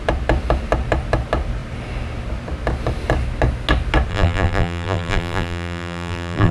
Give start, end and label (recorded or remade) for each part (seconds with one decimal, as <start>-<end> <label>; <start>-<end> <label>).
0.0-4.1 recorded; 4.1-6.5 remade